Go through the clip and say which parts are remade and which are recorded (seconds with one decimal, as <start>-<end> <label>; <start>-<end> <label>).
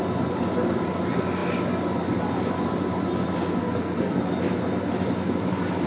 0.0-3.6 recorded; 3.6-4.2 remade; 4.2-5.9 recorded